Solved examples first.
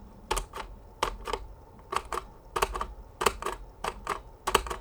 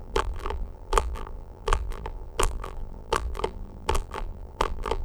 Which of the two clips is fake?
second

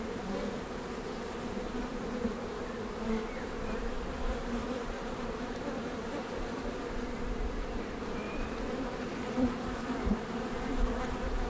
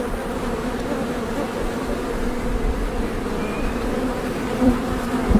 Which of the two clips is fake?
first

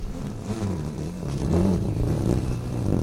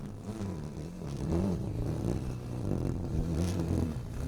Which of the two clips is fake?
first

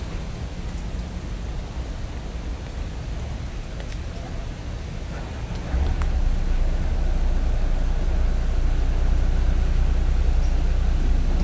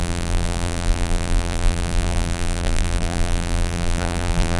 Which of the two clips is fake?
second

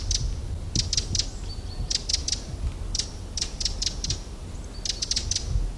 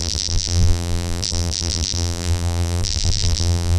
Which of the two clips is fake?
second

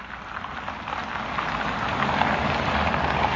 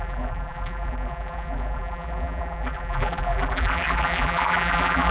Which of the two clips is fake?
second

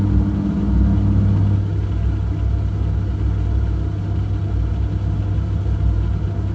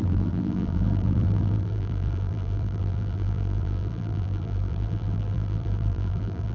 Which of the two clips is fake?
second